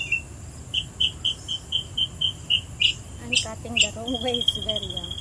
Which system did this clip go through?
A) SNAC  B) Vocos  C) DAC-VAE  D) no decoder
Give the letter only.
D